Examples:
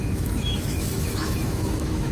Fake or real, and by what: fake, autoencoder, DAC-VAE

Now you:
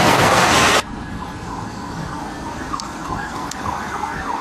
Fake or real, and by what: fake, codec, SNAC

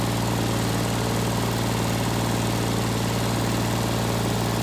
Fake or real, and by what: real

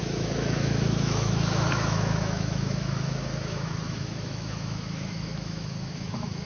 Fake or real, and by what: fake, autoencoder, DAC-VAE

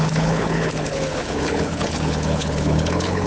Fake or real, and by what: fake, codec, HILCodec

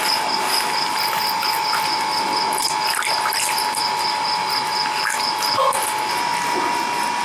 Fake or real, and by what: real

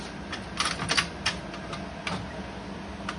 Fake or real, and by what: real